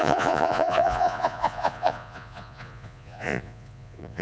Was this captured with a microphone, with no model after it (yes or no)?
no